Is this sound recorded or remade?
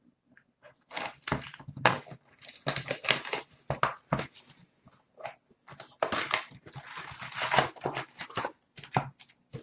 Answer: recorded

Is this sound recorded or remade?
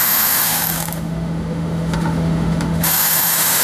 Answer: remade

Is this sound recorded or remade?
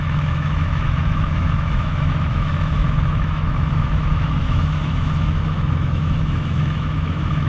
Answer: remade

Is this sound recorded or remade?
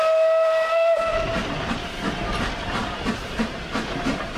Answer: recorded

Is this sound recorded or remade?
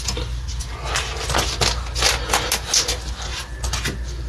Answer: recorded